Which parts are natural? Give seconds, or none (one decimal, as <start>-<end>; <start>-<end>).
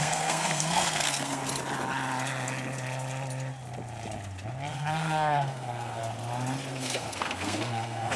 1.4-4.7; 6.0-6.7